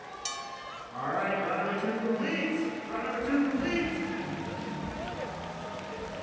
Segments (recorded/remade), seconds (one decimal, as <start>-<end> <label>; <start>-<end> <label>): 0.0-6.2 recorded